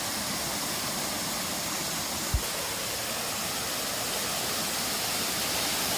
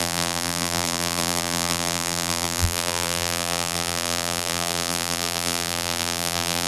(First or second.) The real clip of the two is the first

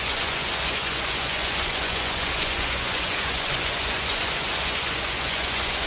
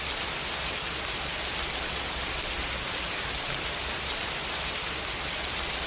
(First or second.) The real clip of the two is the second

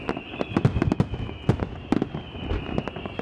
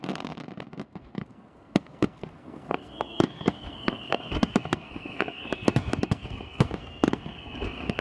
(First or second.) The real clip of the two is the first